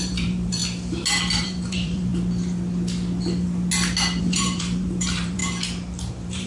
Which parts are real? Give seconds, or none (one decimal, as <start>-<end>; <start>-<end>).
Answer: 0.6-1.4; 2.1-4.2; 5.4-6.1